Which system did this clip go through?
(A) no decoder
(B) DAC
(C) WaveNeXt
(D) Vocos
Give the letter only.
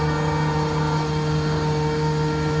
A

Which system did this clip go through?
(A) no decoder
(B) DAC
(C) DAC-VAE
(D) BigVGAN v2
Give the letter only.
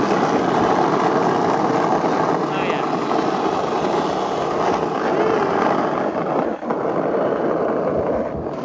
A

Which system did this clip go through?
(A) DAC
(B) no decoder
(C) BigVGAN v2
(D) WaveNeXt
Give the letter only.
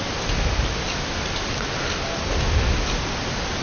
B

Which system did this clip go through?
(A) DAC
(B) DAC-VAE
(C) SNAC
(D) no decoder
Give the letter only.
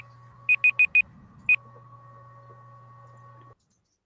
D